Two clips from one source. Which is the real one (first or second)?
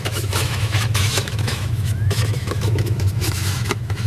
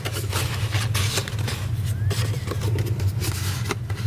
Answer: second